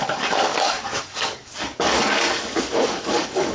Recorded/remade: remade